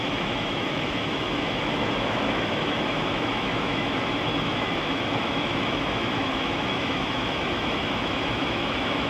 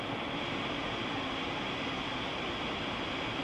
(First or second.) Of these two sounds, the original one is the second